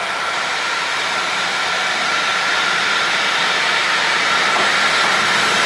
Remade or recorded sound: recorded